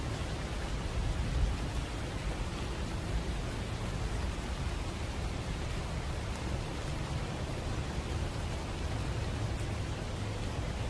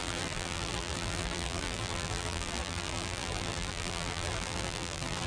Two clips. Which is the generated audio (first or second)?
second